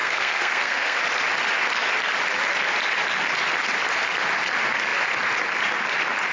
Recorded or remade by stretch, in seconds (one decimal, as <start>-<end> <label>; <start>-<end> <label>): 0.0-1.0 remade; 1.0-6.3 recorded